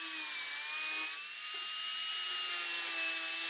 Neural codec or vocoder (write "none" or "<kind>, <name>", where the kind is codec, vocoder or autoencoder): none